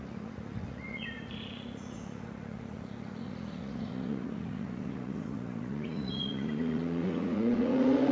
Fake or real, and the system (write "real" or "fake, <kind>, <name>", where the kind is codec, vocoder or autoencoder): fake, vocoder, Vocos